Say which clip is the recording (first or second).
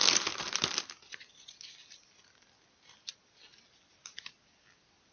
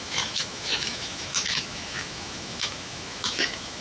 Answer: first